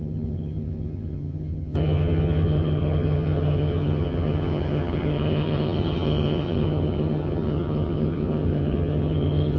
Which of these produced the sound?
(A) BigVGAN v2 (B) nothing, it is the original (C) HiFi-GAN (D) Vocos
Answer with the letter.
C